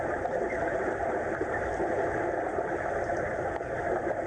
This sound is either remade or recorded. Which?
recorded